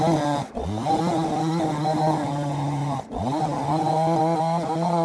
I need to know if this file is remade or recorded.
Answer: recorded